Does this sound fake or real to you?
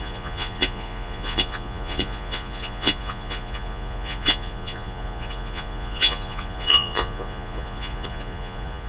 fake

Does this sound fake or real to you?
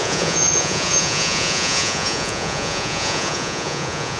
fake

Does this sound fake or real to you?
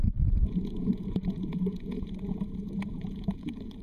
fake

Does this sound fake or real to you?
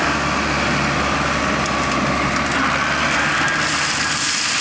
real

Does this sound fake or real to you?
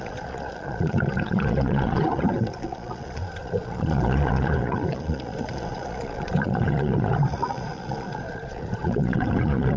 fake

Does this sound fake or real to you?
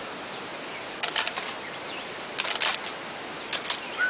real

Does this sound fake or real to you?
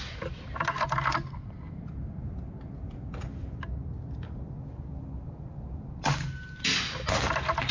real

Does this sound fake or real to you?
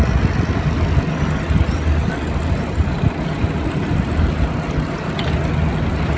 real